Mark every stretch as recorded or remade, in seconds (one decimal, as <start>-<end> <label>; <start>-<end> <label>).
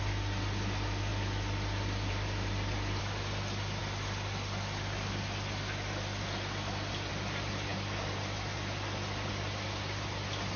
0.0-10.6 recorded